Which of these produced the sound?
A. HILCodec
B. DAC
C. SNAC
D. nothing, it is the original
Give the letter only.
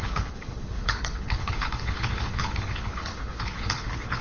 A